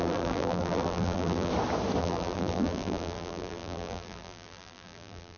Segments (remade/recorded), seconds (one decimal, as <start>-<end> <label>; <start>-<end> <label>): 0.0-1.5 remade; 1.5-2.0 recorded; 2.0-5.4 remade